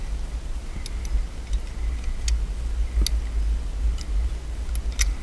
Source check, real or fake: real